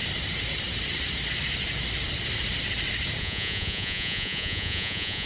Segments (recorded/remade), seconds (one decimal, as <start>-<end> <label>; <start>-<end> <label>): 0.0-3.2 recorded; 3.2-5.3 remade